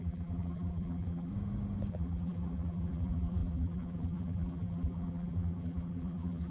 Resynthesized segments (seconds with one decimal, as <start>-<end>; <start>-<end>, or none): 0.0-1.3; 1.9-6.5